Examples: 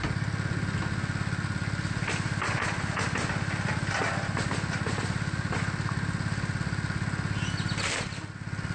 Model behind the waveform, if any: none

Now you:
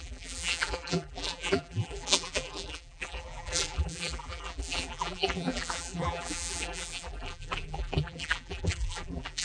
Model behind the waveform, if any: vocoder, BigVGAN v2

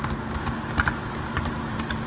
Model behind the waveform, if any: vocoder, BigVGAN v2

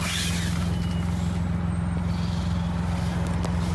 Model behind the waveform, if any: none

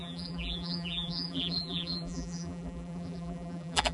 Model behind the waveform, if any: vocoder, BigVGAN v2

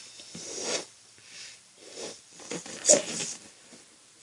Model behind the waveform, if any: vocoder, BigVGAN v2